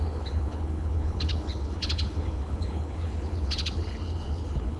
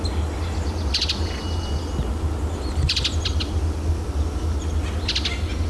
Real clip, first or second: second